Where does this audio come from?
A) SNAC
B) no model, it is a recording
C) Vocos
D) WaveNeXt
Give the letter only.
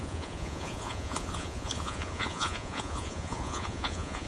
C